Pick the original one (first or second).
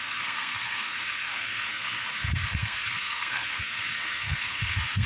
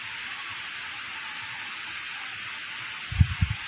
second